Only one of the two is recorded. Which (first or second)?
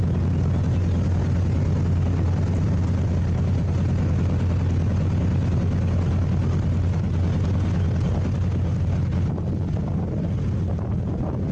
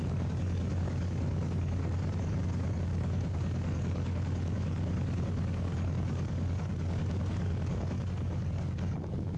first